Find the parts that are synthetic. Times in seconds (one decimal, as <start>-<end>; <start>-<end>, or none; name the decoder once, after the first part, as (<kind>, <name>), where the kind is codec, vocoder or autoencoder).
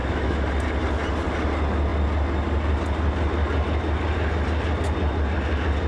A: 0.0-0.5 (autoencoder, DAC-VAE)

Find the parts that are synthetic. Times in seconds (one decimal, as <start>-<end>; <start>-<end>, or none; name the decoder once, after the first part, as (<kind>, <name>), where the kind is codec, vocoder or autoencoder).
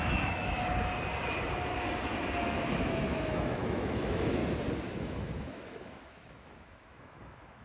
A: 0.0-0.7 (autoencoder, DAC-VAE); 2.4-4.4; 5.0-7.6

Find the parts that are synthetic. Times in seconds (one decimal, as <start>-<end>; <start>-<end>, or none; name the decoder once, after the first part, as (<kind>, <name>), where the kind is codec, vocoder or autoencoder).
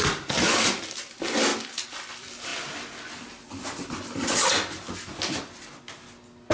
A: none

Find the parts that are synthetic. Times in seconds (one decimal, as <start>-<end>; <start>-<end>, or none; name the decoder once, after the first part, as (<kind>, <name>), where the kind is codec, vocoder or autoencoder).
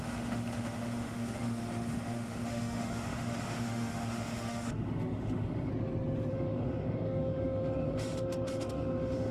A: 0.0-5.7 (autoencoder, DAC-VAE); 6.3-9.3